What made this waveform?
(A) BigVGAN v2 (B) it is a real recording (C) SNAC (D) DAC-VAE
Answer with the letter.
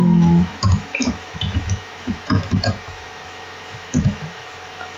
D